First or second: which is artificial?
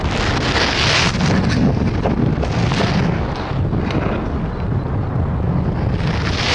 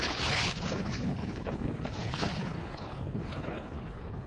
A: second